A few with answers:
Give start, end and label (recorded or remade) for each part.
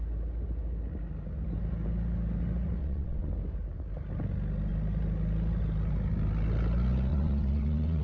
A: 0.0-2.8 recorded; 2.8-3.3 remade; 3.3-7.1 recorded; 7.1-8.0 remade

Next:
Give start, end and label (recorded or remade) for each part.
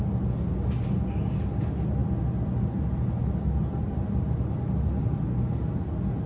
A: 0.0-6.3 recorded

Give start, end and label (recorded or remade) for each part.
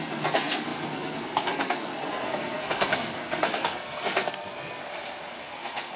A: 0.0-4.8 remade; 4.8-5.4 recorded; 5.4-6.0 remade